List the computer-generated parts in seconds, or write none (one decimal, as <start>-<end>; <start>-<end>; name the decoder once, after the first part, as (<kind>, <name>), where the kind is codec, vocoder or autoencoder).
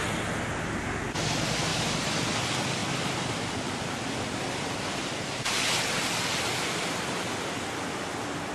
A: 2.8-5.5 (vocoder, BigVGAN v2)